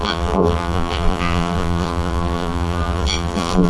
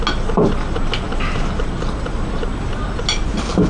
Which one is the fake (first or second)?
first